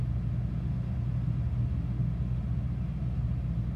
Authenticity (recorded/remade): recorded